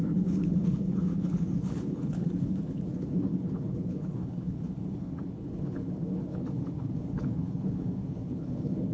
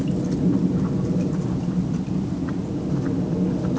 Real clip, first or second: second